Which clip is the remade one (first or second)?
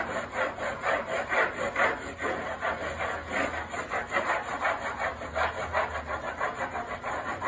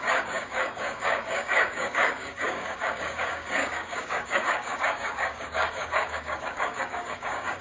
second